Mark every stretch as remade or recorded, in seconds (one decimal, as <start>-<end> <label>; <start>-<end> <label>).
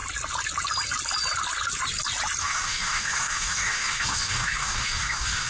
0.0-2.4 recorded; 2.4-5.5 remade